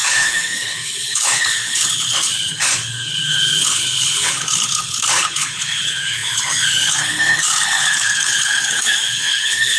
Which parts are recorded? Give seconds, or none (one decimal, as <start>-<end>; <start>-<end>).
none